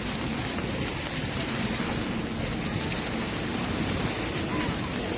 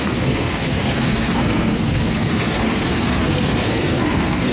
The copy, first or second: second